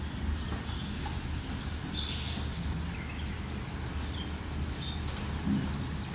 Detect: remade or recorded recorded